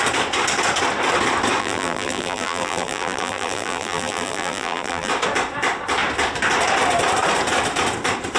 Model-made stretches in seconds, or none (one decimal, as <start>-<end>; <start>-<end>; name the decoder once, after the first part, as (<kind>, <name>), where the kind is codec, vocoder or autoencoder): 1.6-5.1 (vocoder, BigVGAN v2)